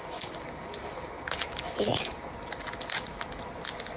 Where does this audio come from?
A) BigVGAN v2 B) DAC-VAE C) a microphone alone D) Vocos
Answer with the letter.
C